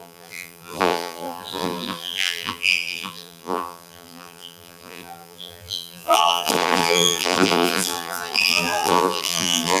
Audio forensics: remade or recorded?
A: remade